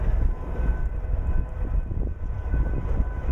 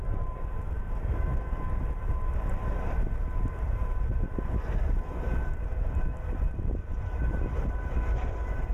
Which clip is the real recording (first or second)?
first